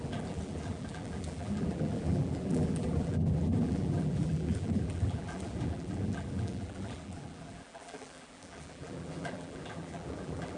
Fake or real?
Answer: fake